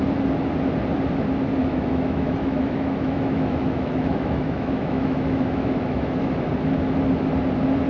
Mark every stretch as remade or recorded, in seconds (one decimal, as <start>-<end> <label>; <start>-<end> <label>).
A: 0.0-1.6 recorded; 1.6-6.3 remade; 6.3-7.9 recorded